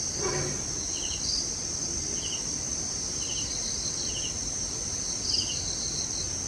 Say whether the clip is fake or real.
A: real